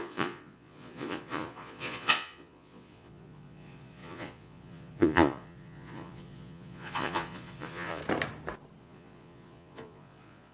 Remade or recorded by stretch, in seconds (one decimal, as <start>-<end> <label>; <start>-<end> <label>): 0.0-8.0 remade; 8.0-8.8 recorded; 8.8-10.5 remade

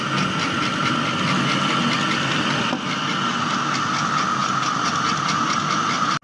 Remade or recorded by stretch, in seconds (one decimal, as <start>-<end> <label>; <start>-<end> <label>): 0.0-6.2 recorded

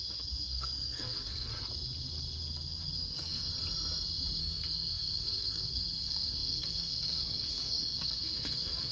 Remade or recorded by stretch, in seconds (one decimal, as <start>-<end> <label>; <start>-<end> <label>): 0.0-1.5 remade; 1.5-2.4 recorded; 2.4-3.5 remade; 3.5-4.4 recorded; 4.4-8.9 remade

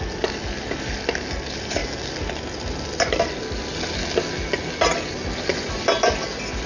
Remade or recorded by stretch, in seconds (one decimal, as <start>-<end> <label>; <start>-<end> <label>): 0.0-6.7 recorded